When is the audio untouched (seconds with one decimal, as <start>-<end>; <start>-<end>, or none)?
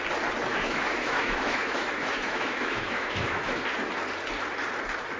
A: 0.0-0.5; 3.6-5.2